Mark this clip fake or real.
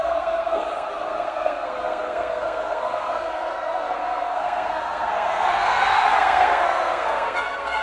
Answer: fake